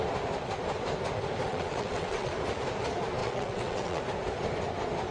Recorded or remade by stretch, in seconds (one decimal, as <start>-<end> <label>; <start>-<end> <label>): 0.0-1.5 recorded; 1.5-2.3 remade; 2.3-3.2 recorded; 3.2-4.0 remade; 4.0-5.1 recorded